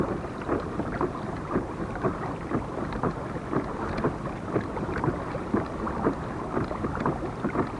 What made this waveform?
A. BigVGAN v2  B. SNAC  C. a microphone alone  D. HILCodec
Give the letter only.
C